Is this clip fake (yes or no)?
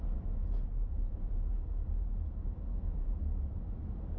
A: no